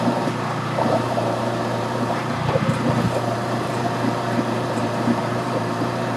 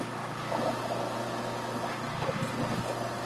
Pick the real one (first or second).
second